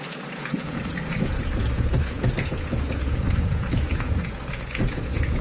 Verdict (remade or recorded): remade